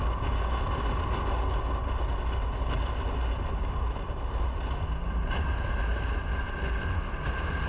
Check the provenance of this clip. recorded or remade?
recorded